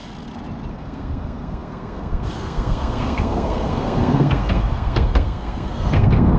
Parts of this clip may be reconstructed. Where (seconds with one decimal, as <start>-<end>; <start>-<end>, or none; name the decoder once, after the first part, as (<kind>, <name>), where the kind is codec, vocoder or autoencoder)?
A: 0.7-6.4 (codec, SNAC)